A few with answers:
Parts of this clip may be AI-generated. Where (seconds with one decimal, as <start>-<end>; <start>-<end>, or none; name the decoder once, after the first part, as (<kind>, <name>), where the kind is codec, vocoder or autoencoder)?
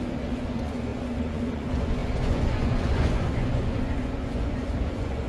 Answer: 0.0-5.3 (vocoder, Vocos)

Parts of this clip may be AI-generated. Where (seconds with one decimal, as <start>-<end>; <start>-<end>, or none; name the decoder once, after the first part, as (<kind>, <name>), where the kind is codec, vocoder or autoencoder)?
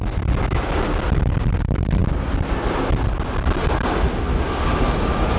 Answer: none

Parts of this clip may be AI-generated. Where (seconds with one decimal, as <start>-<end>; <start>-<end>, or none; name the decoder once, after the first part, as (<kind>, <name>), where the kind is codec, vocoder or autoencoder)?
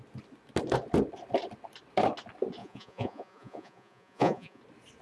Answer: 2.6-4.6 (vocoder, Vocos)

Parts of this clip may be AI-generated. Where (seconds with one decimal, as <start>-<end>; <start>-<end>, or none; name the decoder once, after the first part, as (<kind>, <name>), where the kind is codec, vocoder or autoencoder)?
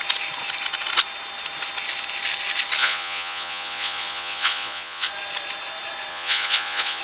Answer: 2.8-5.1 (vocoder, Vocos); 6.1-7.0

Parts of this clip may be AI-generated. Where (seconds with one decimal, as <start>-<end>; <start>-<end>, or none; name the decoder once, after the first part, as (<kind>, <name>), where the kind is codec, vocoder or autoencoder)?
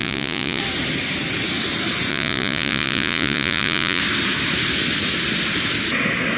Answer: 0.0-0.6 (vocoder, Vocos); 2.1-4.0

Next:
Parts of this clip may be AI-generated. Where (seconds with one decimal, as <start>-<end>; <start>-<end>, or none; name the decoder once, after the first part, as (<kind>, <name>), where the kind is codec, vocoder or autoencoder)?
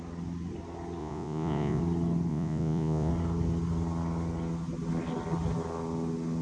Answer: 1.0-1.8 (vocoder, Vocos); 2.3-3.1